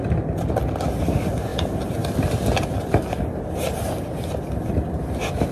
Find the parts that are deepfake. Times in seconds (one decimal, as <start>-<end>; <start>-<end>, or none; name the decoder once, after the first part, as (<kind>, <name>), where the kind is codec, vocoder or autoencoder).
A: none